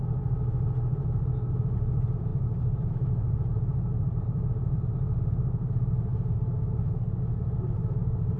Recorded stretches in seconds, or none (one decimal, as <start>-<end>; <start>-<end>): none